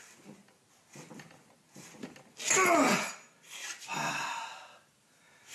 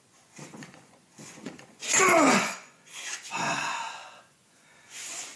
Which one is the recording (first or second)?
first